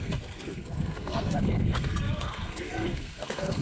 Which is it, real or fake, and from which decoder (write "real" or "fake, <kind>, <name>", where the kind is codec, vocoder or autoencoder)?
fake, codec, SNAC